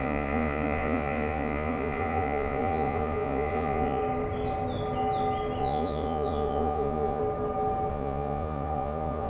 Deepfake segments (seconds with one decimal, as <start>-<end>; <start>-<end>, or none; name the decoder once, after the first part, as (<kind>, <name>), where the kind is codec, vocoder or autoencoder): 0.0-4.0 (vocoder, Vocos); 5.6-7.2; 7.9-9.3